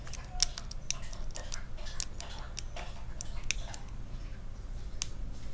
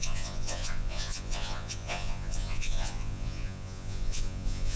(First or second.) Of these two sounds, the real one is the first